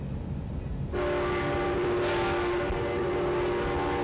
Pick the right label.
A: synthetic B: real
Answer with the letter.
B